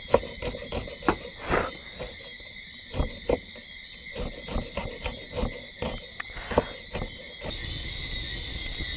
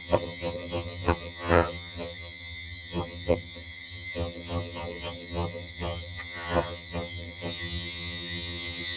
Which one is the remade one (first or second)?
second